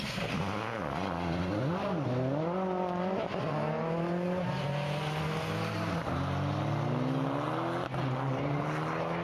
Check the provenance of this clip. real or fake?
real